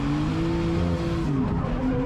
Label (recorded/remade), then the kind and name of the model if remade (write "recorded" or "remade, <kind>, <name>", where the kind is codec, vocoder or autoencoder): recorded